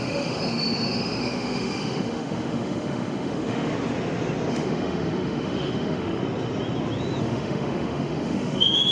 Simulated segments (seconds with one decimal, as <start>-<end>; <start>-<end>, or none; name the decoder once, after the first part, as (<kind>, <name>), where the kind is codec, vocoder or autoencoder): 0.0-3.7 (autoencoder, DAC-VAE); 4.5-6.2; 7.2-8.9